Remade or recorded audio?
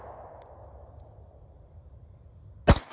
recorded